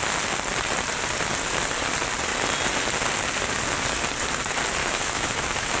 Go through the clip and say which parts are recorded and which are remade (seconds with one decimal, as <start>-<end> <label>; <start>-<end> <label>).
0.0-4.8 recorded; 4.8-5.8 remade